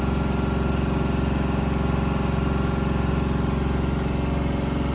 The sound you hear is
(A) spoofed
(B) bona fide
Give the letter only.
B